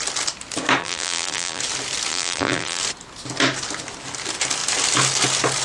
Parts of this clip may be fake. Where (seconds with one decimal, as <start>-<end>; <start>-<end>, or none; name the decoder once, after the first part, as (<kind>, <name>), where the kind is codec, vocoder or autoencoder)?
0.8-1.6 (vocoder, BigVGAN v2); 2.1-2.8